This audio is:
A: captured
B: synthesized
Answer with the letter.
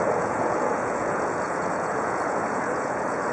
B